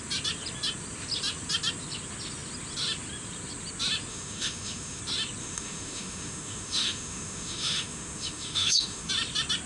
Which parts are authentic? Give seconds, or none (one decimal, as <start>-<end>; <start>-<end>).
0.0-4.1; 5.0-5.4; 9.1-9.7